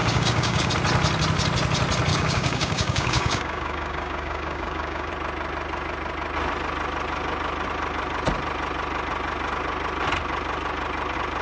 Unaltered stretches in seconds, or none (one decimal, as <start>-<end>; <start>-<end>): 0.7-2.1; 5.1-11.4